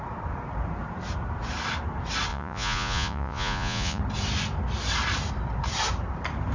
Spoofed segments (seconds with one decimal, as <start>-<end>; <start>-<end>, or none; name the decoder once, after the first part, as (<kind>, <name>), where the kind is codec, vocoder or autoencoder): 2.3-4.0 (vocoder, Vocos)